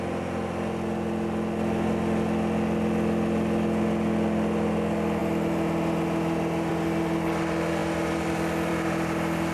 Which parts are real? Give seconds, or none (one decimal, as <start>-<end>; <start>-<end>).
0.0-9.5